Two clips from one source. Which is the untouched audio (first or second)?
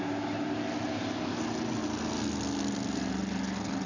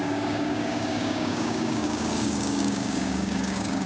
first